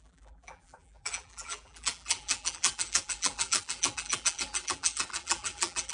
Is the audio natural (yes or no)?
no